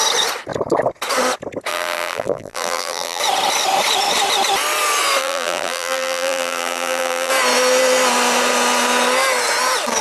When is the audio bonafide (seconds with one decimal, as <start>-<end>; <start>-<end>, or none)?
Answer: 0.0-1.7; 3.2-5.2; 7.3-10.0